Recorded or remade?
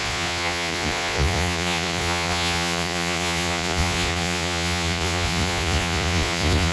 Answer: remade